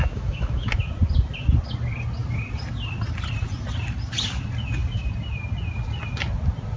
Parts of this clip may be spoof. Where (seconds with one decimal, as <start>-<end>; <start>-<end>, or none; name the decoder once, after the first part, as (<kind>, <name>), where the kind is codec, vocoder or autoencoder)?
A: 0.0-0.7 (autoencoder, DAC-VAE)